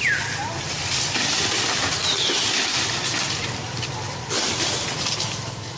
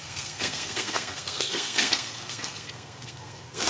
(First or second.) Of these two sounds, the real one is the first